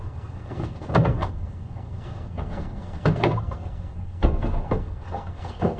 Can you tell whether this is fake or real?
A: fake